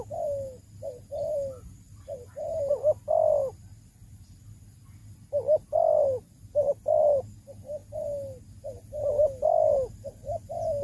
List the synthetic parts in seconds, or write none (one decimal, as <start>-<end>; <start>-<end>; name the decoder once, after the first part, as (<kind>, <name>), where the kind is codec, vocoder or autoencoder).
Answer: none